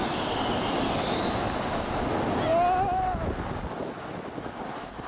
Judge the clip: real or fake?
real